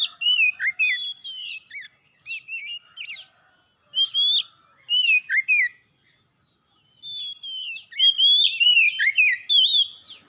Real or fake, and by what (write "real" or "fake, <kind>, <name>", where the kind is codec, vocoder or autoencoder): real